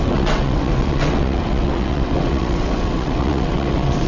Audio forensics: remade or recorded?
remade